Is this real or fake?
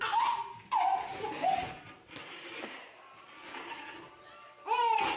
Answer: real